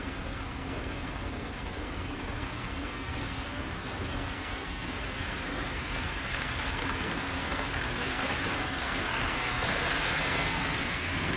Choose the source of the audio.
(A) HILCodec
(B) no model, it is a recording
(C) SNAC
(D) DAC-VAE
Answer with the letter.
C